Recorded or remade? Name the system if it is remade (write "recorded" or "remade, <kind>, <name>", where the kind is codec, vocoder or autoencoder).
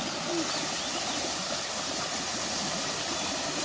recorded